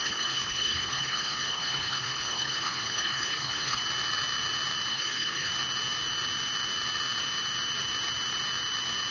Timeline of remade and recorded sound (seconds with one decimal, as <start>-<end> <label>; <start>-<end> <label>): 0.0-3.8 remade; 3.8-4.9 recorded; 4.9-5.5 remade; 5.5-9.1 recorded